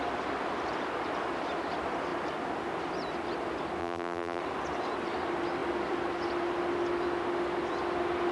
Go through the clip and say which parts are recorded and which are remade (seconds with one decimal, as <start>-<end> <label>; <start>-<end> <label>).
0.0-3.8 recorded; 3.8-4.4 remade; 4.4-8.3 recorded